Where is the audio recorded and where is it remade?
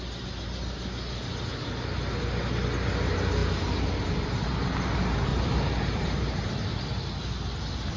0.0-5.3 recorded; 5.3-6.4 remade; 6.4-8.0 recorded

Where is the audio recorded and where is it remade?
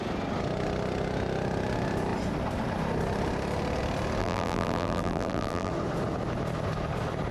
0.0-4.2 recorded; 4.2-5.7 remade; 5.7-7.3 recorded